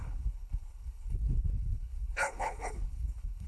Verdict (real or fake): fake